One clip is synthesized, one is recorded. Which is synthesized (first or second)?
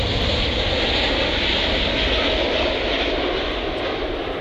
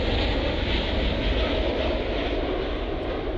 first